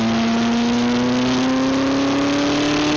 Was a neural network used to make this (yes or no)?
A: no